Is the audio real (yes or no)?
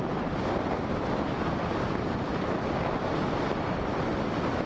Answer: yes